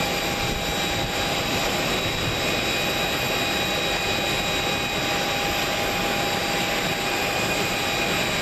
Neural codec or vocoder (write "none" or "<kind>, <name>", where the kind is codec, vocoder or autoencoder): none